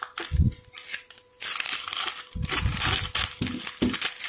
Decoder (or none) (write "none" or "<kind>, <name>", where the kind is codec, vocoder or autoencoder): none